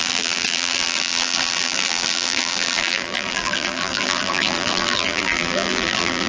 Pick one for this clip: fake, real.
fake